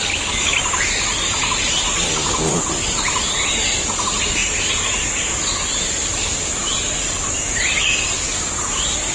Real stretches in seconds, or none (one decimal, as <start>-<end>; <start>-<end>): 0.0-9.1